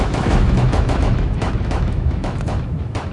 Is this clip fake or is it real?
fake